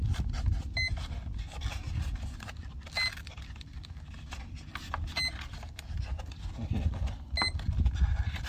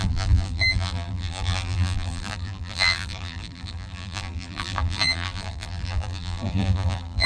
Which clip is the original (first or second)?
first